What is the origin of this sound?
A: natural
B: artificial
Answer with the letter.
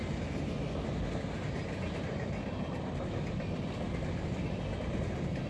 A